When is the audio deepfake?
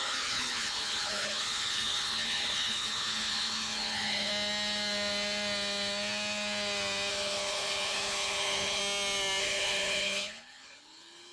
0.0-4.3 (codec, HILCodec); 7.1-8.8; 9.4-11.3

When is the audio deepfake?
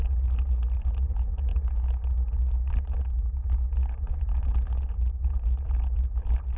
none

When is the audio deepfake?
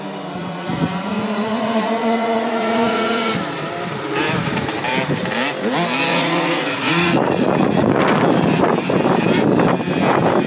0.4-3.3 (vocoder, Vocos); 6.1-8.0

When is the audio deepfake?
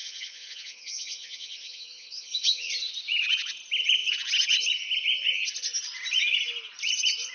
0.0-2.7 (vocoder, HiFi-GAN)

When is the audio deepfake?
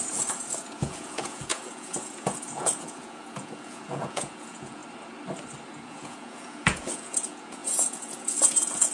0.0-4.8 (vocoder, Vocos); 5.7-8.9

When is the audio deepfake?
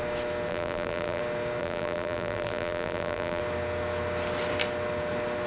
0.5-1.2 (vocoder, BigVGAN v2); 1.6-3.4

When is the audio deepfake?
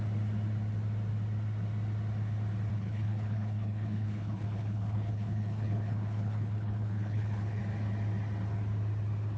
2.7-7.6 (codec, HILCodec)